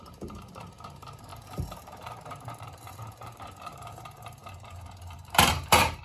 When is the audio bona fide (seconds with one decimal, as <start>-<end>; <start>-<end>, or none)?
none